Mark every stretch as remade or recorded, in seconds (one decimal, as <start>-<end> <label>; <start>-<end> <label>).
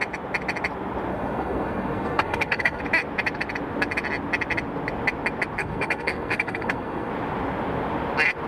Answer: 0.0-1.1 recorded; 1.1-2.8 remade; 2.8-5.6 recorded; 5.6-7.1 remade; 7.1-8.5 recorded